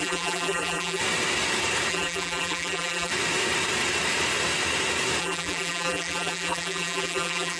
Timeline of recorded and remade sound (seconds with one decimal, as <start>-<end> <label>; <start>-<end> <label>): 0.0-1.0 remade; 1.0-1.9 recorded; 1.9-3.1 remade; 3.1-5.2 recorded; 5.2-7.6 remade